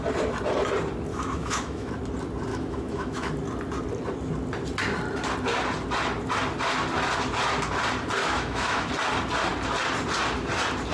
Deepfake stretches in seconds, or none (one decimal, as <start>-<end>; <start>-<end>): 1.1-1.9; 2.5-3.3; 8.2-8.9